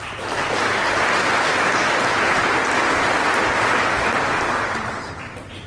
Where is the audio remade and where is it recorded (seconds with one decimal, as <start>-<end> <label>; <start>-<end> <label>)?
0.0-5.7 recorded